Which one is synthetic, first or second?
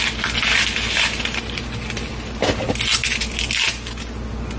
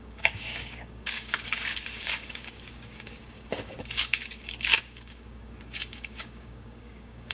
second